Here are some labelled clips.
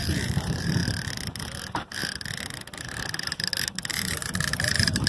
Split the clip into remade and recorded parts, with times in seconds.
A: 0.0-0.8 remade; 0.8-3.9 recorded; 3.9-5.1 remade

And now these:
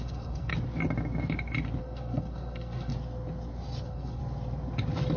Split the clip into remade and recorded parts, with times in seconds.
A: 0.0-0.5 remade; 0.5-1.8 recorded; 1.8-2.9 remade; 2.9-3.8 recorded; 3.8-4.2 remade; 4.2-5.2 recorded

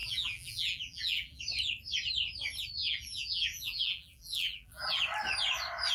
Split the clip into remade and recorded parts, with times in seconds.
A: 0.0-1.4 remade; 1.4-2.8 recorded; 2.8-5.0 remade; 5.0-5.9 recorded

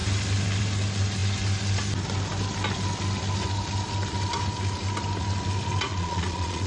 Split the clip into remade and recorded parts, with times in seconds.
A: 0.0-5.9 recorded; 5.9-6.7 remade

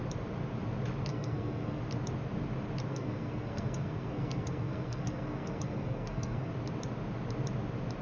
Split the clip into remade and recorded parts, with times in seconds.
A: 0.0-1.1 recorded; 1.1-1.8 remade; 1.8-2.9 recorded; 2.9-6.5 remade; 6.5-8.0 recorded

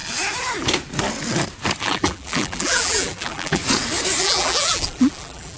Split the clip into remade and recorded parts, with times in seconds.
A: 0.0-1.8 recorded; 1.8-3.6 remade; 3.6-4.2 recorded; 4.2-5.6 remade